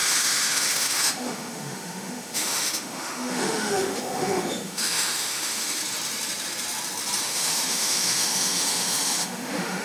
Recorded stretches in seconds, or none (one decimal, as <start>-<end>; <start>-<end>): 5.8-7.2